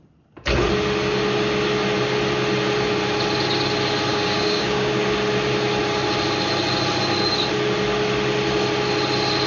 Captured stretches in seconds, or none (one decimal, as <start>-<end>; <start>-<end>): 0.0-4.1; 4.9-9.5